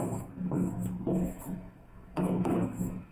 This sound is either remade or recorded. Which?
remade